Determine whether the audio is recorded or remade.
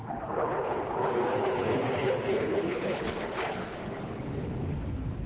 remade